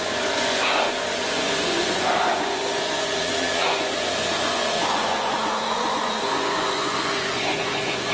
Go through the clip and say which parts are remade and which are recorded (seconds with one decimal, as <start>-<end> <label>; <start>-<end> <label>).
0.0-8.1 remade